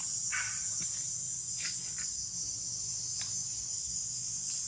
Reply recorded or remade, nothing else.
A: recorded